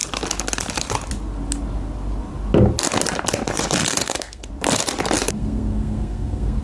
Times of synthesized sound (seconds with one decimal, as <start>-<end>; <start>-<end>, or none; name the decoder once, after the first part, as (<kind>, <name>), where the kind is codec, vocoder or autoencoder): 3.8-4.5 (codec, SNAC); 5.4-6.6